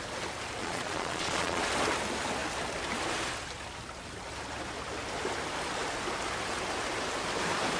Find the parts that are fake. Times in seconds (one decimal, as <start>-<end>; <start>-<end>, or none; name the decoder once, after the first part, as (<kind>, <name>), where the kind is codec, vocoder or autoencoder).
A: 0.6-1.6 (vocoder, Vocos)